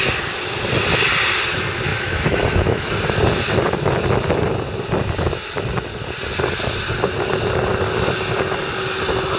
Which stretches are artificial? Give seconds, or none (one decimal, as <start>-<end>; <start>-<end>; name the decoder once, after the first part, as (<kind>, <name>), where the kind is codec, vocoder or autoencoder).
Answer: 1.9-2.9 (autoencoder, DAC-VAE)